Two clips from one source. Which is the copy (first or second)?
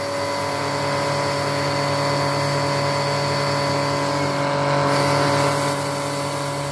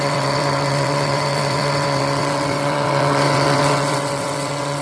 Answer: second